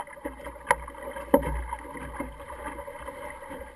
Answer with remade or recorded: recorded